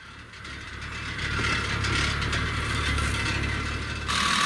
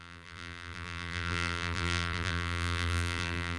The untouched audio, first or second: first